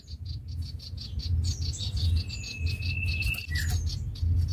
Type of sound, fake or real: real